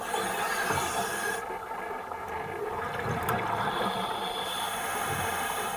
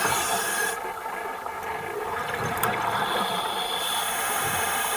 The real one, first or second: first